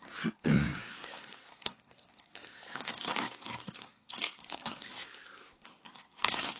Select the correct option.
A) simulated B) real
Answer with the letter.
A